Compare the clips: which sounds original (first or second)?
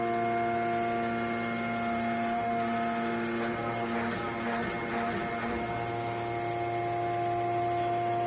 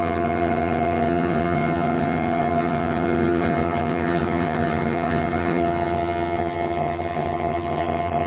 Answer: first